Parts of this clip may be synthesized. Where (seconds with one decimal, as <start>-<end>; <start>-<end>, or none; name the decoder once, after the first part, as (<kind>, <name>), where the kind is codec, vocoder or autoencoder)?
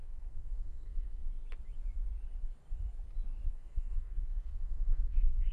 0.0-1.2 (codec, SNAC); 3.5-5.5